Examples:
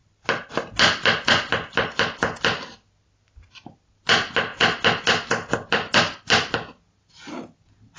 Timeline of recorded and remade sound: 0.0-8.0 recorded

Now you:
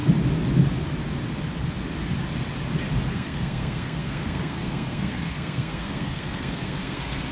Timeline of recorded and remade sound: 0.0-3.1 recorded; 3.1-7.3 remade